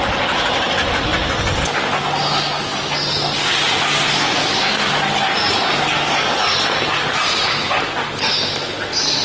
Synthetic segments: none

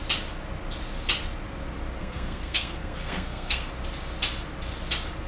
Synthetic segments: 2.0-3.7 (codec, SNAC)